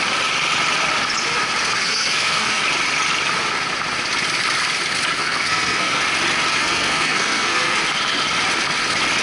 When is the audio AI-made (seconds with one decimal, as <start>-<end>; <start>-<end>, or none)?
1.8-2.6; 5.2-6.0; 6.5-7.8